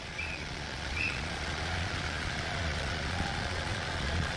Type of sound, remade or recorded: remade